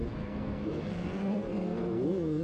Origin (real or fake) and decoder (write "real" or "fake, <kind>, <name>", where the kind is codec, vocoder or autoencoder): fake, codec, SNAC